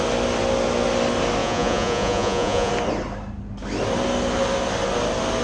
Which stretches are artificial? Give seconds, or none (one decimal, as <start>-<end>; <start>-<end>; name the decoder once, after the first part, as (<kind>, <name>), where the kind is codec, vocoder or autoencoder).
1.4-2.7 (vocoder, Vocos)